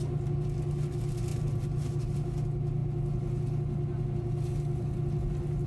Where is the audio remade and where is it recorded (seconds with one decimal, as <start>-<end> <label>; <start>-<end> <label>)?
0.0-5.7 recorded

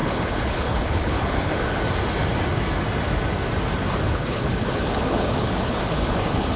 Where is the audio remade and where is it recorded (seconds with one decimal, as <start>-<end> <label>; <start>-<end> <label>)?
0.0-1.8 remade; 1.8-4.1 recorded; 4.1-6.6 remade